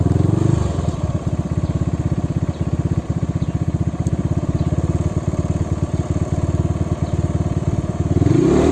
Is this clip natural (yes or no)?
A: no